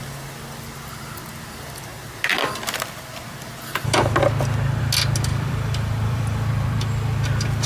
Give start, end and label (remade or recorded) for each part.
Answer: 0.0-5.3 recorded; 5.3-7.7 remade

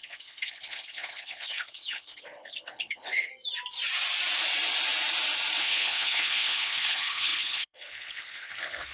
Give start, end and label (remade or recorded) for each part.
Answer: 0.0-3.3 remade; 3.3-5.6 recorded; 5.6-8.9 remade

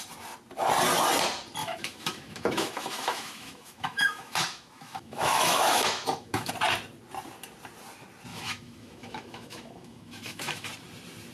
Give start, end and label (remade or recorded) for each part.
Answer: 0.0-1.6 recorded; 1.6-6.5 remade; 6.5-8.3 recorded; 8.3-10.7 remade; 10.7-11.3 recorded

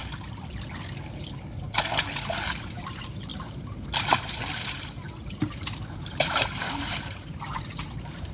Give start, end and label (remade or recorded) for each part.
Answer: 0.0-2.3 recorded; 2.3-8.3 remade

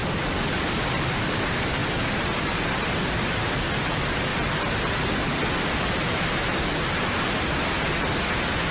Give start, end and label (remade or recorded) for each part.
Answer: 0.0-0.5 recorded; 0.5-1.8 remade; 1.8-2.4 recorded; 2.4-4.3 remade; 4.3-5.6 recorded; 5.6-8.7 remade

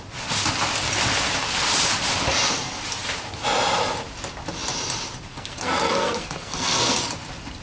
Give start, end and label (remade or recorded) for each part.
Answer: 0.0-5.3 recorded; 5.3-7.1 remade; 7.1-7.6 recorded